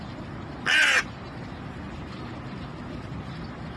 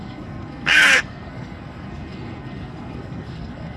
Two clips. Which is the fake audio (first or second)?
second